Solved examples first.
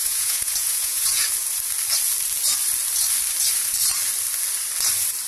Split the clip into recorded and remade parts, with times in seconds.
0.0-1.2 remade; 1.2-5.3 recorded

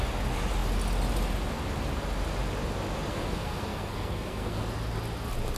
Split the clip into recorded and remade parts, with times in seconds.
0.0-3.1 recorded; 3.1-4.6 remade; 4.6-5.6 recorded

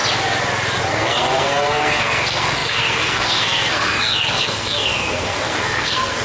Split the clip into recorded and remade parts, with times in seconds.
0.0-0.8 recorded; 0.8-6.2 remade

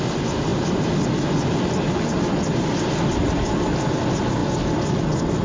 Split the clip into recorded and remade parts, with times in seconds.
0.0-5.4 recorded